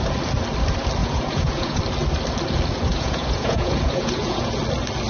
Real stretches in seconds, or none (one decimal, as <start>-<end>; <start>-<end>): 0.0-1.0; 1.8-2.9; 4.6-5.1